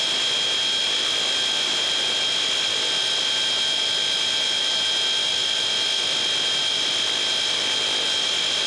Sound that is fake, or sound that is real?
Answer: real